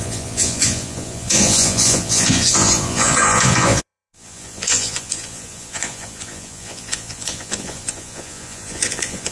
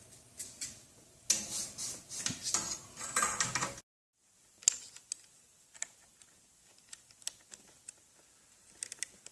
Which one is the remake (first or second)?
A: first